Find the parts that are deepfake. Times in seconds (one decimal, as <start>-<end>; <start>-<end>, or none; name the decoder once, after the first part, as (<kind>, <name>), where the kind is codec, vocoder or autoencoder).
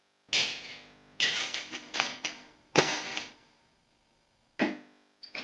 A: 1.4-4.6 (codec, SNAC)